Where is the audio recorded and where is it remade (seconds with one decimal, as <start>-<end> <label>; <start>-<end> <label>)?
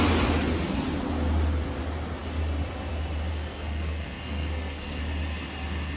0.0-3.3 recorded; 3.3-5.0 remade; 5.0-6.0 recorded